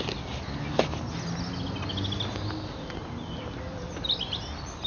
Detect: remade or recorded recorded